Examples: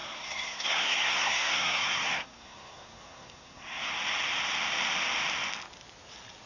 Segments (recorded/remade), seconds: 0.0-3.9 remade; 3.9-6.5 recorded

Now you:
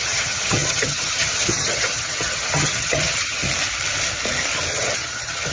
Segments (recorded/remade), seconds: 0.0-3.4 remade; 3.4-4.7 recorded; 4.7-5.5 remade

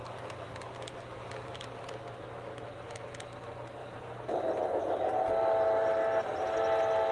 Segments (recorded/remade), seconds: 0.0-3.8 recorded; 3.8-4.3 remade; 4.3-7.1 recorded